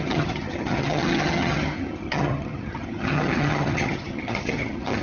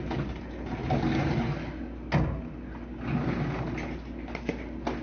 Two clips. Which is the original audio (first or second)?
second